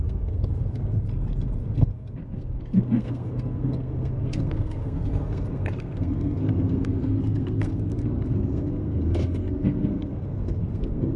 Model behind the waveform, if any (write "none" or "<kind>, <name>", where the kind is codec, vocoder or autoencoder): codec, SNAC